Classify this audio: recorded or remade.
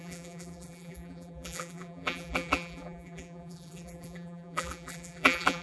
remade